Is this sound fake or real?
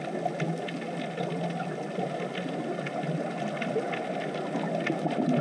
real